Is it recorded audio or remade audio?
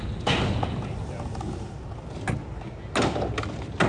recorded